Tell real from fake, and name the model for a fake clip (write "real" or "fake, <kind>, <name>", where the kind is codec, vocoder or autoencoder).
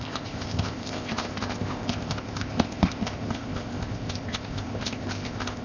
fake, codec, ZipCodec